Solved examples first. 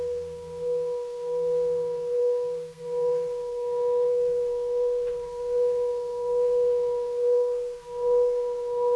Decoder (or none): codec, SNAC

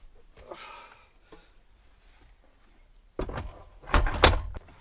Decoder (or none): none